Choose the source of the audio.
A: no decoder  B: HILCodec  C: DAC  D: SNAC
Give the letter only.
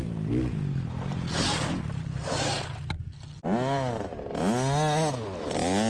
A